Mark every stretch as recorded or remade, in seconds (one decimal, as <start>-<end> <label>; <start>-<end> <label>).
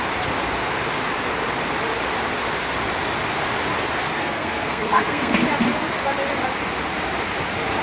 0.0-4.1 recorded; 4.1-5.4 remade; 5.4-7.8 recorded